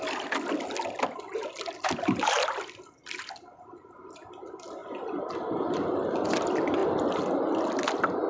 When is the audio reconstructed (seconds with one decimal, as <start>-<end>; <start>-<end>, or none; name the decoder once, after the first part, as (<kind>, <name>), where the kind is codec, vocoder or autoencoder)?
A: 0.0-4.8 (vocoder, BigVGAN v2); 6.1-8.3